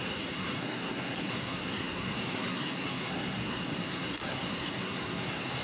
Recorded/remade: remade